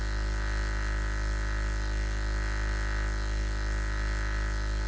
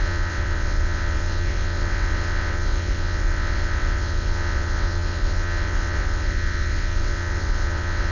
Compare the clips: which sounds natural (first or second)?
first